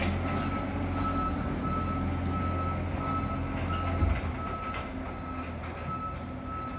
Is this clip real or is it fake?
real